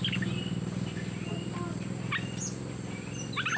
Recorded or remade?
recorded